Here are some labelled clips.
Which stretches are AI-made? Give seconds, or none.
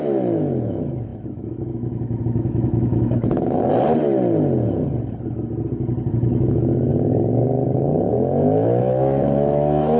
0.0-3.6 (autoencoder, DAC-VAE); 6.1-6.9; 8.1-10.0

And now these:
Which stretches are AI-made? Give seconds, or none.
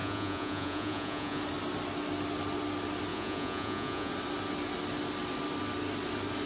0.0-1.4 (vocoder, Vocos); 3.1-4.1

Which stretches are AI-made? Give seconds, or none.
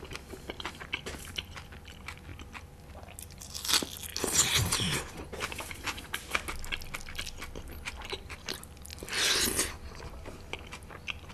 none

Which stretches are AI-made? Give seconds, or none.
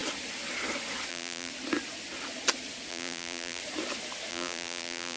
1.1-1.5 (vocoder, BigVGAN v2); 2.9-3.6; 4.3-5.2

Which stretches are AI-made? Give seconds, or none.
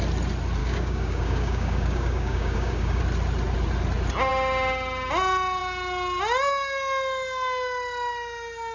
0.6-3.0 (codec, DAC)